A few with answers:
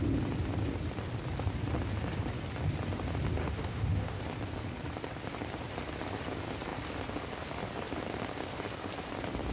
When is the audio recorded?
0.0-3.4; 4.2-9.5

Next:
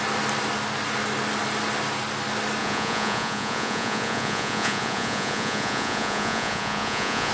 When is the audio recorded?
0.0-2.6

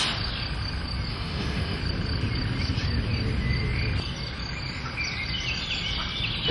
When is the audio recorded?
0.0-1.1; 1.8-6.5

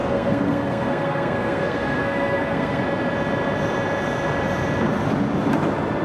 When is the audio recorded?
2.8-6.0

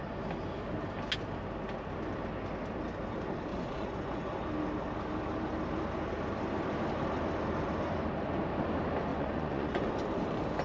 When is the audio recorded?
0.0-3.5; 4.4-9.1; 9.9-10.6